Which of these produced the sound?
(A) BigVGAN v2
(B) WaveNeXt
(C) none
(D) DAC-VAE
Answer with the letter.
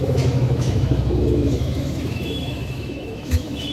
D